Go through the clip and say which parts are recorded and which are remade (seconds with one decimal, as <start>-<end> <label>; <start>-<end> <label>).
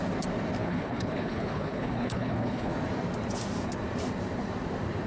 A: 0.0-0.6 recorded; 0.6-2.7 remade; 2.7-5.1 recorded